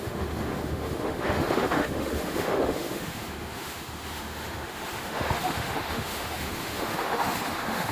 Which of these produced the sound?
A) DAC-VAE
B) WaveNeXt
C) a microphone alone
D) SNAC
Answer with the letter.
A